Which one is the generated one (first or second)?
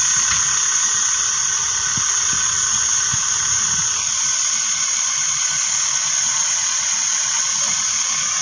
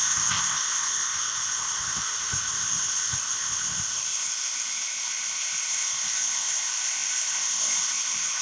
second